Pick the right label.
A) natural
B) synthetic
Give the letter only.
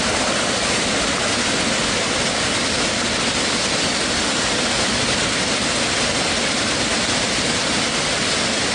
A